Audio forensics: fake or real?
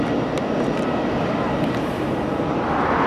real